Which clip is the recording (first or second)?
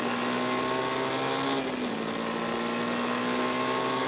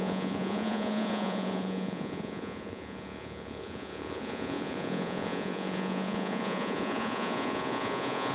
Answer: first